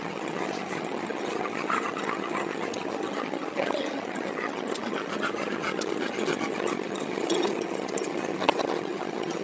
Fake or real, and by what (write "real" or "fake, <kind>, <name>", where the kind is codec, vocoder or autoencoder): fake, vocoder, HiFi-GAN